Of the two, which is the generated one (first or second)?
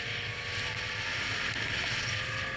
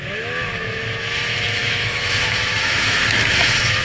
second